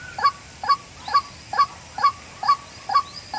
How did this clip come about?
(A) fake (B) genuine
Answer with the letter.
A